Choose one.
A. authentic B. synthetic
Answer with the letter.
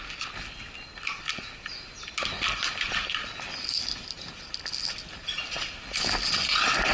A